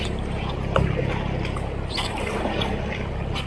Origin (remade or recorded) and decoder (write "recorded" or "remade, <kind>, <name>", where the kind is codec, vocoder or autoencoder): recorded